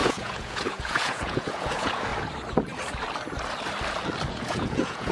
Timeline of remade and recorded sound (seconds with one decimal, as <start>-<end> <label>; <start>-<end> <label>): 0.0-2.1 remade; 2.1-4.3 recorded; 4.3-5.1 remade